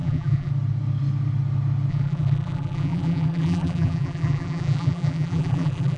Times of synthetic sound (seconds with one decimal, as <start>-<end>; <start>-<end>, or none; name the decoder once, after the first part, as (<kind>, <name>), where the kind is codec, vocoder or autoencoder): 0.0-0.5 (vocoder, BigVGAN v2); 1.9-6.0